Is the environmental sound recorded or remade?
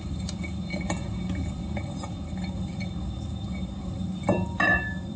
recorded